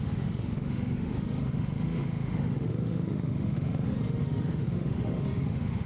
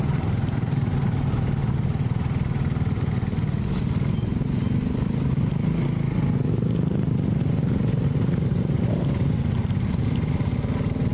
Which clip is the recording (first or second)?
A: second